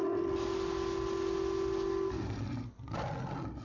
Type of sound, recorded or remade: recorded